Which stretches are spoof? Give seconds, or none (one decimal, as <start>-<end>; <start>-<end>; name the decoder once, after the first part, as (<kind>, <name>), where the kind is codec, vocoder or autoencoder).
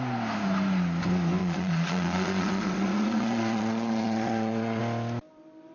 1.4-4.8 (vocoder, Vocos)